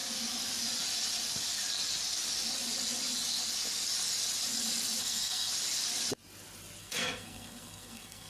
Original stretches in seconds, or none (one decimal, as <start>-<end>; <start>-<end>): 0.0-5.0; 5.5-6.8